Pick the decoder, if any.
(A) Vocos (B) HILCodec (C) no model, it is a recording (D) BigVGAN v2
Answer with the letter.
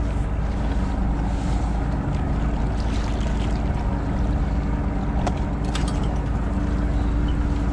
C